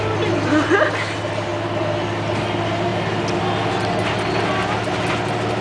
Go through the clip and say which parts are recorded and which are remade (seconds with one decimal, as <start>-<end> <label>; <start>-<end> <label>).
0.0-5.6 recorded